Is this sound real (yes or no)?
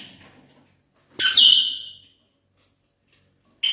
yes